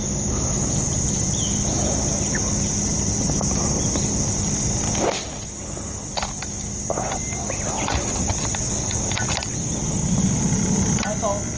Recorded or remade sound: recorded